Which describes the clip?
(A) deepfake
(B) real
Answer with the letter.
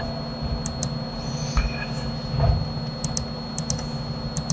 B